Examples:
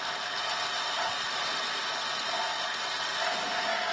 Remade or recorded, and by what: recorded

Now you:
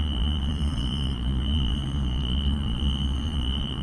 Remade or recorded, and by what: remade, vocoder, Vocos